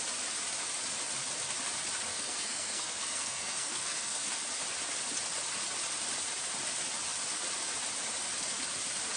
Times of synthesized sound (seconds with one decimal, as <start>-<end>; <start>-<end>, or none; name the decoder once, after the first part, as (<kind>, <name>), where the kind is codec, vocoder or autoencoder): 2.1-4.3 (codec, SNAC)